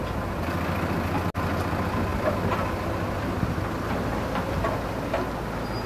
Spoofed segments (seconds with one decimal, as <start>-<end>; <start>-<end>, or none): none